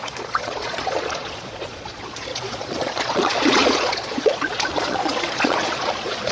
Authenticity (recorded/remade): remade